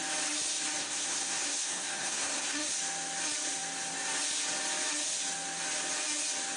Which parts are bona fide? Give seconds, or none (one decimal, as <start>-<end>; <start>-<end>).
0.0-0.8; 2.7-6.6

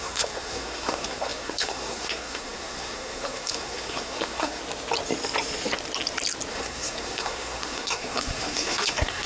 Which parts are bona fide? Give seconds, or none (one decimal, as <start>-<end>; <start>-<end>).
4.6-6.5

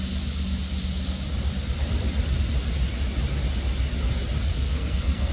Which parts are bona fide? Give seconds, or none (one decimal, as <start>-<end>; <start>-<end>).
0.0-4.5